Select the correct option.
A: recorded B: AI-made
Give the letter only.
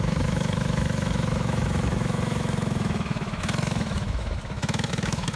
B